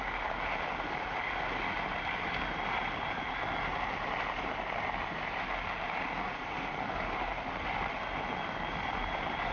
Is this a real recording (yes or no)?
yes